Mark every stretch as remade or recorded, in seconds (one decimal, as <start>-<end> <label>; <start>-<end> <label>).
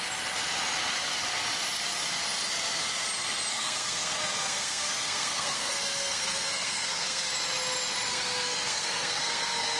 0.0-3.5 recorded; 3.5-7.3 remade; 7.3-8.1 recorded; 8.1-9.8 remade